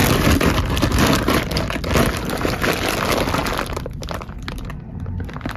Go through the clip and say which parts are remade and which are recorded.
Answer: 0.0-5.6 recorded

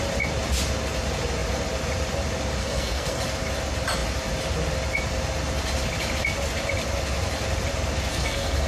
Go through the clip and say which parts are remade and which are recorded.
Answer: 0.0-2.6 recorded; 2.6-3.2 remade; 3.2-8.1 recorded; 8.1-8.7 remade

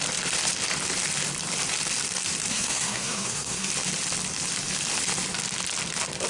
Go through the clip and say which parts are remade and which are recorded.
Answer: 0.0-2.5 recorded; 2.5-3.7 remade; 3.7-6.3 recorded

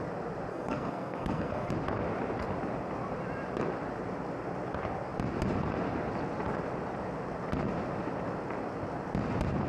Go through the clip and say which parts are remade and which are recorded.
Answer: 0.0-0.5 recorded; 0.5-1.7 remade; 1.7-9.7 recorded

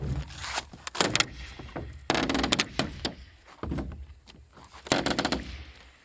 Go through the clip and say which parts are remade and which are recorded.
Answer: 0.0-6.0 recorded

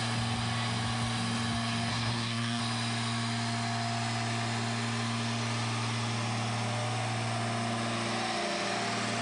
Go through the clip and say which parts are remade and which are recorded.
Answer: 0.0-1.9 recorded; 1.9-2.6 remade; 2.6-9.2 recorded